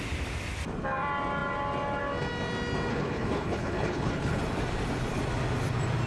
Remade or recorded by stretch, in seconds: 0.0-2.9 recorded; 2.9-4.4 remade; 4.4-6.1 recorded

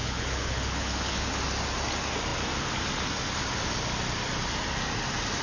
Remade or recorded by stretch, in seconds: 0.0-1.4 remade; 1.4-5.4 recorded